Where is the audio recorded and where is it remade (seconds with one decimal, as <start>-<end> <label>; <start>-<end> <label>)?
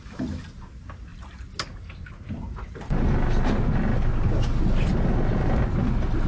0.0-6.3 recorded